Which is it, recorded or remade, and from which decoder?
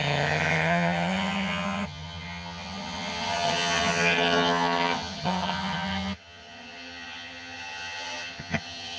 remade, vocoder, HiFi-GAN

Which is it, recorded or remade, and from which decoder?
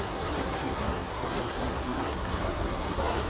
remade, codec, SNAC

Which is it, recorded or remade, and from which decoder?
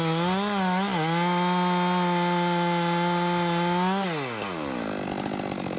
recorded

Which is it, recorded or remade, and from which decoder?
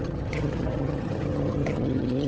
remade, vocoder, HiFi-GAN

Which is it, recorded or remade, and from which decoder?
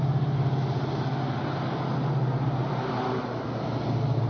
recorded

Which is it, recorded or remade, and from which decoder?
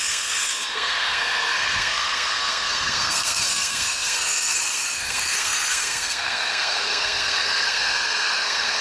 remade, codec, SNAC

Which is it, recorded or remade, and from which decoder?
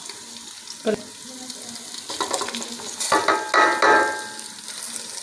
recorded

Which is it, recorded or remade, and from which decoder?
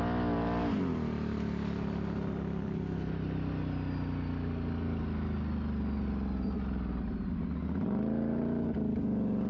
recorded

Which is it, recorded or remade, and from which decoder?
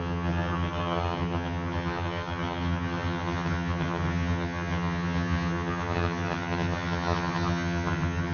remade, vocoder, HiFi-GAN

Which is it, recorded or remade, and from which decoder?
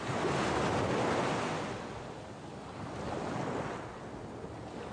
recorded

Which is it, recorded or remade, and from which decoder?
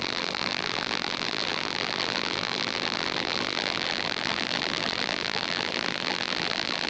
remade, vocoder, BigVGAN v2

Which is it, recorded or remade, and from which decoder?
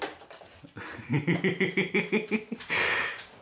recorded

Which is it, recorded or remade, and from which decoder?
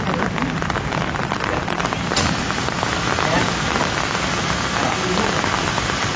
recorded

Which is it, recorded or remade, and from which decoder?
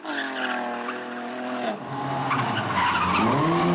recorded